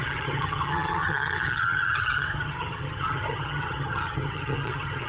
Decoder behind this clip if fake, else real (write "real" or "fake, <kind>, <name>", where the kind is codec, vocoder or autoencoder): fake, vocoder, HiFi-GAN